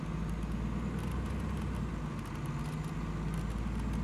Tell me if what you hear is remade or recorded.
recorded